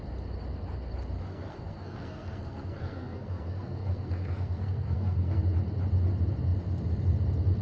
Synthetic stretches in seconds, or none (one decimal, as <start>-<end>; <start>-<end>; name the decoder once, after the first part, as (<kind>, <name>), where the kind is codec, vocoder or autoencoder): 1.3-5.4 (codec, SNAC)